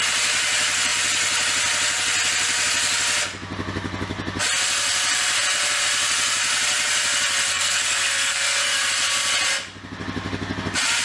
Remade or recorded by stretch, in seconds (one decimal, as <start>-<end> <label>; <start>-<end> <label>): 0.0-7.5 recorded; 7.5-8.9 remade; 8.9-11.0 recorded

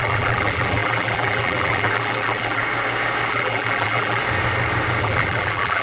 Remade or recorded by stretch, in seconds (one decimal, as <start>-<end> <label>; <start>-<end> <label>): 0.0-2.6 remade; 2.6-3.3 recorded; 3.3-4.2 remade; 4.2-5.0 recorded; 5.0-5.8 remade

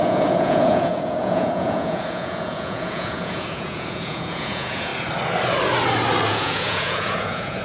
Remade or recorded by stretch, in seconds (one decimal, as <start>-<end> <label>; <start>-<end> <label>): 0.0-4.9 remade; 4.9-6.3 recorded; 6.3-7.6 remade

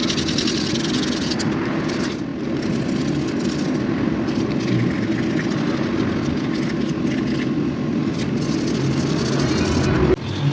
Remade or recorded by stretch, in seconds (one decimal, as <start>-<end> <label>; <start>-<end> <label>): 0.0-10.5 recorded

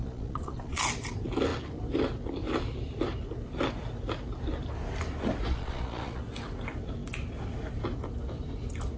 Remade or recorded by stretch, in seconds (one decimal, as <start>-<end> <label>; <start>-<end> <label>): 0.0-0.8 remade; 0.8-5.5 recorded; 5.5-6.2 remade; 6.2-9.0 recorded